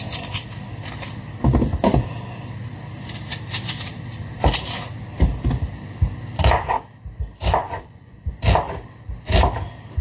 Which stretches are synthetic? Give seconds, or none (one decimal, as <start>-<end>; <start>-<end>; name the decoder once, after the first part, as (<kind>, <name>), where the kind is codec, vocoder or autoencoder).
7.6-8.3 (vocoder, Vocos)